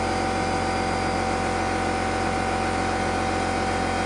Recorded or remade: recorded